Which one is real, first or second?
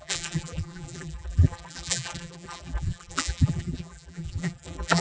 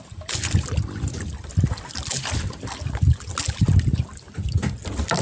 second